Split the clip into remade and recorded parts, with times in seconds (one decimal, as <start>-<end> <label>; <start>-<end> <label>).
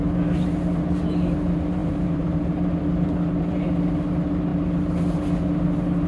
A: 0.0-1.8 recorded; 1.8-2.3 remade; 2.3-6.1 recorded